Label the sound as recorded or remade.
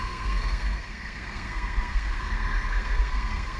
remade